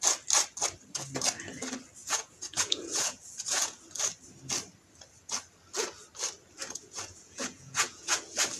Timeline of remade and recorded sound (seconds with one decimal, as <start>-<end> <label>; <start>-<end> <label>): 0.0-2.0 recorded; 2.0-3.8 remade; 3.8-6.6 recorded; 6.6-8.2 remade; 8.2-8.6 recorded